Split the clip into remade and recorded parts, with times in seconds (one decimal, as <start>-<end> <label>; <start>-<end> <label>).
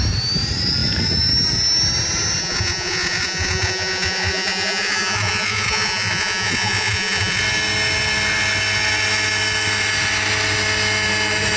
0.0-2.4 recorded; 2.4-7.4 remade; 7.4-11.6 recorded